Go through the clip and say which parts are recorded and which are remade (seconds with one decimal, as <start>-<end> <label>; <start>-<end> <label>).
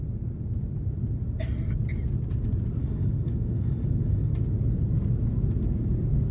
0.0-2.8 recorded; 2.8-4.3 remade; 4.3-6.3 recorded